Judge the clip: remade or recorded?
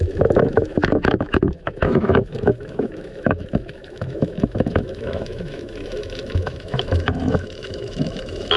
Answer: remade